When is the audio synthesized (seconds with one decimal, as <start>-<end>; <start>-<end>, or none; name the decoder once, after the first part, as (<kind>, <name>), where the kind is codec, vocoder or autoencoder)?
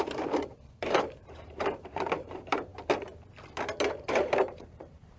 0.0-2.7 (vocoder, BigVGAN v2); 4.0-5.2